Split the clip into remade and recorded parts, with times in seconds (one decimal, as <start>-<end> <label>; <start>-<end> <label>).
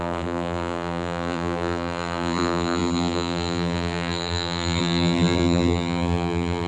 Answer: 0.0-6.7 remade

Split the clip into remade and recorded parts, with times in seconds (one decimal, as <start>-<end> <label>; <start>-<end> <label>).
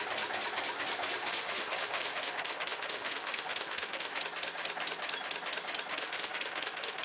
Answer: 0.0-1.2 recorded; 1.2-4.2 remade; 4.2-5.9 recorded; 5.9-7.0 remade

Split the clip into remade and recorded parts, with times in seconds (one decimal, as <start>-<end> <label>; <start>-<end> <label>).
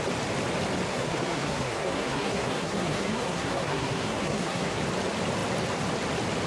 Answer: 0.0-0.9 recorded; 0.9-4.8 remade; 4.8-6.5 recorded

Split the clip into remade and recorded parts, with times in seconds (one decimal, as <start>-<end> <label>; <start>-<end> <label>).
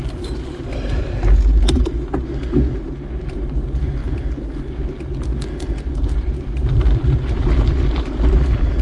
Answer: 0.0-2.3 remade; 2.3-3.2 recorded; 3.2-4.0 remade; 4.0-6.0 recorded; 6.0-7.0 remade; 7.0-8.8 recorded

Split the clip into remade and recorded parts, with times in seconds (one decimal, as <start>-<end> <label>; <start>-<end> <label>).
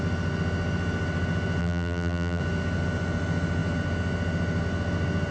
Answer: 0.0-1.6 recorded; 1.6-2.4 remade; 2.4-5.3 recorded